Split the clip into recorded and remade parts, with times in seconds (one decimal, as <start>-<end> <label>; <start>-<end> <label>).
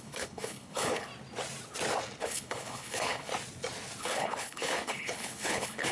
0.0-1.1 remade; 1.1-2.2 recorded; 2.2-3.3 remade; 3.3-4.0 recorded; 4.0-5.9 remade